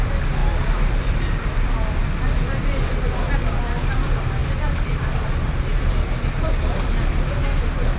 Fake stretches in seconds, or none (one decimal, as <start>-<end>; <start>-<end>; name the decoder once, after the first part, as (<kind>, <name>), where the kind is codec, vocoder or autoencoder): none